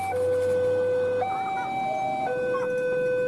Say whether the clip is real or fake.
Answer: real